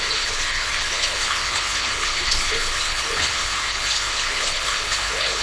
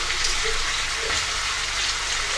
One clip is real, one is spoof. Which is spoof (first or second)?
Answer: first